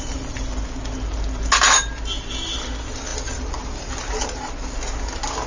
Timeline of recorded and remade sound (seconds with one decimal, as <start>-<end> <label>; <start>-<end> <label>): 0.0-5.5 recorded